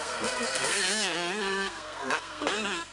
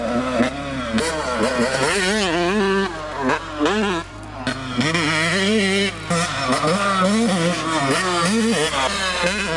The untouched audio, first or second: second